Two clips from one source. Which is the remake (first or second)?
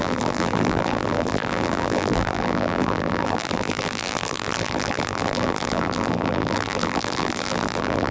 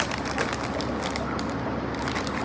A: first